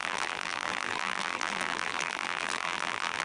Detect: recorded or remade remade